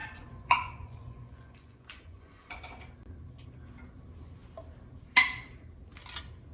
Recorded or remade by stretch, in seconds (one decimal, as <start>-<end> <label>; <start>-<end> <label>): 0.0-2.6 remade; 2.6-6.5 recorded